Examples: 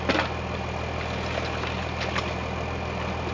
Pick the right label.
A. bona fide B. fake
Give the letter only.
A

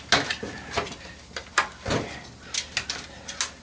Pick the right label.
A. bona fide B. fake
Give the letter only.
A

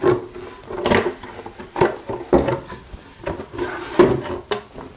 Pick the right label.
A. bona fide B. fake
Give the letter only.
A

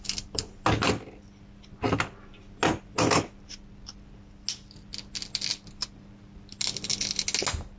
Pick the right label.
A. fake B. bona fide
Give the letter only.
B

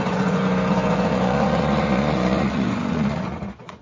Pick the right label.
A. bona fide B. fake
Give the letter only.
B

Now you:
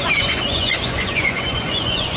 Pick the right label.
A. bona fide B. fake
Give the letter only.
B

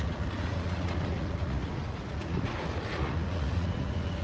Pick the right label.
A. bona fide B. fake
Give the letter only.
B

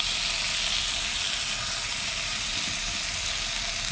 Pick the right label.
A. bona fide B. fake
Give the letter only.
A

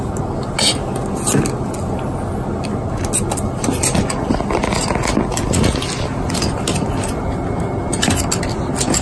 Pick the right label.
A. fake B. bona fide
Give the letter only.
B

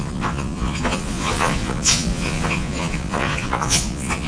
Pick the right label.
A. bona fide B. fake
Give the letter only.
B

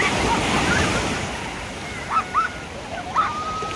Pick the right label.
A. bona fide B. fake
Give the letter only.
A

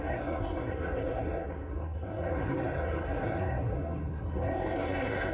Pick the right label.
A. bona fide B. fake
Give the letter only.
B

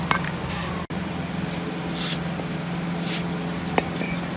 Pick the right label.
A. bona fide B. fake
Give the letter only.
A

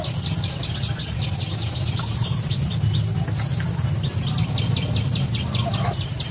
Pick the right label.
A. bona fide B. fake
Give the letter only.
A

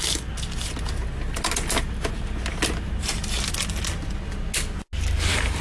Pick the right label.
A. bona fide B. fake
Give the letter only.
A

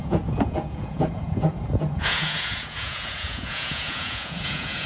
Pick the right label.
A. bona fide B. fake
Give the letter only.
B